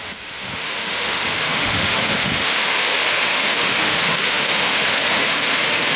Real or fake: fake